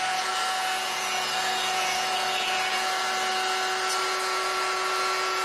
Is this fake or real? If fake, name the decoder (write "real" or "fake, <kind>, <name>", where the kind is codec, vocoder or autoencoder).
fake, vocoder, Vocos